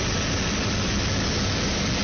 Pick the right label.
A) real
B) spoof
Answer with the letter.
A